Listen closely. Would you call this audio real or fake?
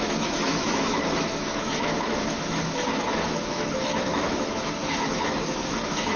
fake